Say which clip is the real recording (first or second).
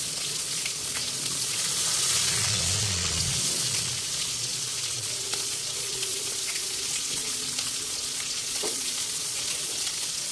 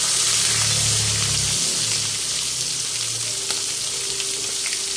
second